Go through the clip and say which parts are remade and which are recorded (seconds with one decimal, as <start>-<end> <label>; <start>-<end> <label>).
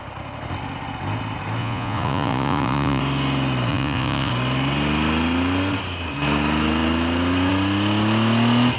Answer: 0.0-1.6 recorded; 1.6-3.0 remade; 3.0-3.7 recorded; 3.7-4.3 remade; 4.3-8.8 recorded